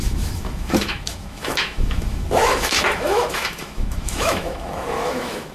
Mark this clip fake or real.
fake